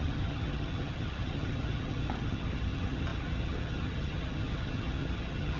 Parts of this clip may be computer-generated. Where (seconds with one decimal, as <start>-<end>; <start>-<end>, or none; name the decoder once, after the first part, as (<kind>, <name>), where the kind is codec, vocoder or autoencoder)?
0.0-5.6 (vocoder, HiFi-GAN)